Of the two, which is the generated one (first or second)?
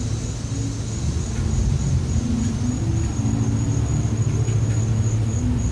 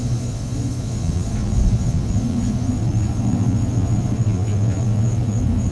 second